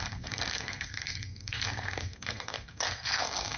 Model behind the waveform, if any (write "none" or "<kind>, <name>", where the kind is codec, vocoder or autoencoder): codec, SNAC